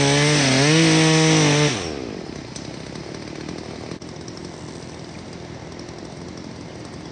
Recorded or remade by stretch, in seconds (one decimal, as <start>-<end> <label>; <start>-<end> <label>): 0.0-7.1 recorded